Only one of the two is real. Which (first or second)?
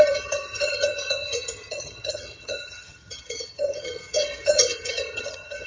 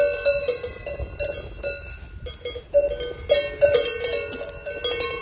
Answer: second